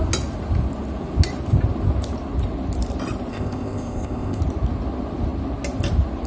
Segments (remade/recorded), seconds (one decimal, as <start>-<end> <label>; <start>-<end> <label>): 0.0-3.3 recorded; 3.3-4.4 remade; 4.4-6.3 recorded